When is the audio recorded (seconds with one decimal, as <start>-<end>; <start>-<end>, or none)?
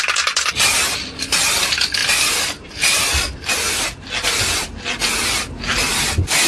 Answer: 0.0-6.5